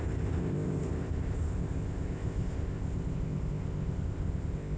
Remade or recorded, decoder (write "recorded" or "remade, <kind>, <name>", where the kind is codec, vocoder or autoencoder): remade, codec, ZipCodec